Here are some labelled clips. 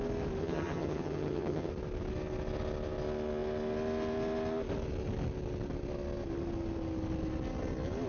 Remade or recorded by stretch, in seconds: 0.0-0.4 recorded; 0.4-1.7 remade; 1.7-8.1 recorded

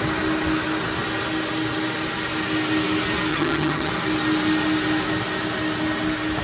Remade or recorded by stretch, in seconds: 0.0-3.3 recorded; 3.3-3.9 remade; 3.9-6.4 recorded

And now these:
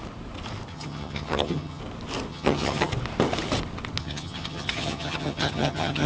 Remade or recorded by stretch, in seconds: 0.0-0.7 recorded; 0.7-1.8 remade; 1.8-2.3 recorded; 2.3-2.9 remade; 2.9-4.0 recorded; 4.0-6.1 remade

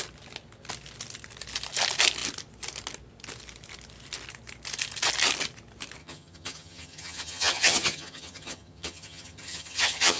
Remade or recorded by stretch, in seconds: 0.0-6.0 recorded; 6.0-10.2 remade

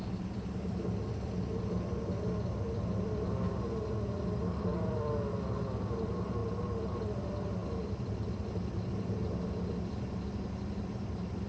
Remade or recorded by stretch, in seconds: 0.0-11.5 recorded